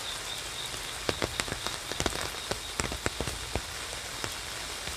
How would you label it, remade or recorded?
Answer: recorded